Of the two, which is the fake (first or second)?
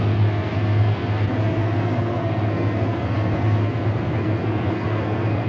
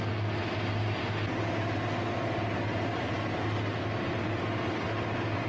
first